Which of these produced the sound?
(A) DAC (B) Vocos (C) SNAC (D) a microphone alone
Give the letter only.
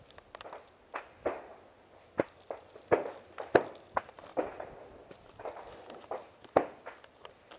D